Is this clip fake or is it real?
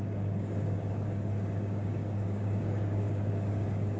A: fake